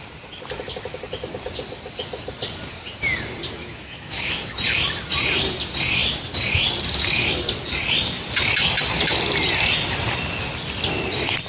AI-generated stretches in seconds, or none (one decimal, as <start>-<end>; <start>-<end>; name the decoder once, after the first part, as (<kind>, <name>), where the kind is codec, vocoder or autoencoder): 3.6-4.3 (autoencoder, DAC-VAE)